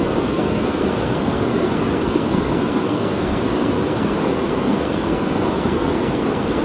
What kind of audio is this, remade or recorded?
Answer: remade